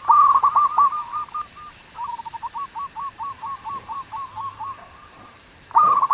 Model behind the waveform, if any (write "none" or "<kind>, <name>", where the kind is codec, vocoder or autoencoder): vocoder, BigVGAN v2